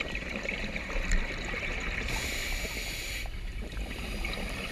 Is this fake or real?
real